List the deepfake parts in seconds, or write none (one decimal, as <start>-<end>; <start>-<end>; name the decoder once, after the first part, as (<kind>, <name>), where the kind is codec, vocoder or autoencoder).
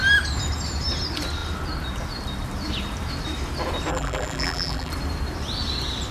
3.9-4.9 (vocoder, BigVGAN v2)